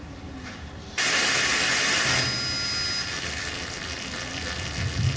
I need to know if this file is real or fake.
real